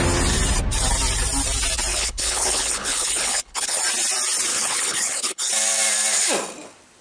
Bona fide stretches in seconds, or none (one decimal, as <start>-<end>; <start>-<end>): 0.0-1.9; 3.8-4.5; 5.5-7.0